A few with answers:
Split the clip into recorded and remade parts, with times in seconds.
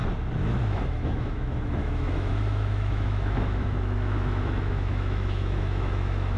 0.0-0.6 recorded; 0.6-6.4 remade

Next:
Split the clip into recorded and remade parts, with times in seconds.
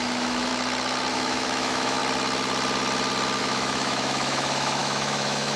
0.0-0.5 remade; 0.5-1.1 recorded; 1.1-2.0 remade; 2.0-3.4 recorded; 3.4-5.6 remade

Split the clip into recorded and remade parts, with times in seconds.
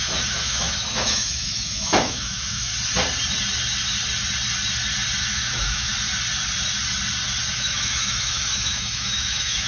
0.0-2.7 remade; 2.7-5.2 recorded; 5.2-5.9 remade; 5.9-7.5 recorded; 7.5-9.7 remade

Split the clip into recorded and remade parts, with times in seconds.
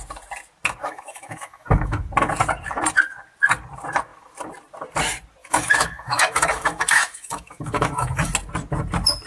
0.0-0.8 recorded; 0.8-2.0 remade; 2.0-5.4 recorded; 5.4-8.3 remade; 8.3-9.3 recorded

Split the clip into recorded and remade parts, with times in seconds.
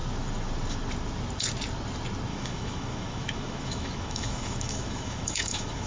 0.0-2.3 recorded; 2.3-5.9 remade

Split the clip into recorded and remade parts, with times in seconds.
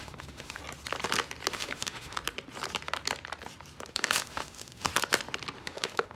0.0-0.6 remade; 0.6-1.5 recorded; 1.5-2.2 remade; 2.2-3.9 recorded; 3.9-4.9 remade; 4.9-5.6 recorded; 5.6-6.2 remade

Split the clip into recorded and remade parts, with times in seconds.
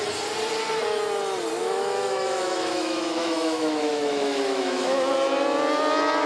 0.0-1.6 recorded; 1.6-5.1 remade; 5.1-6.3 recorded